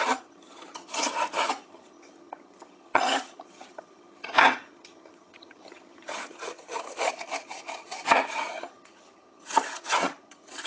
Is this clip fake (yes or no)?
yes